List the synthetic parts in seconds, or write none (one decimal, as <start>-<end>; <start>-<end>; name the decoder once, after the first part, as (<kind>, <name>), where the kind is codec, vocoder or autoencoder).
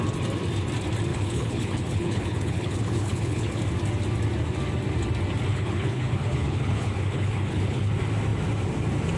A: 1.1-3.6 (codec, HILCodec); 5.5-7.9